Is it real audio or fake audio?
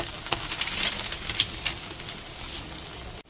real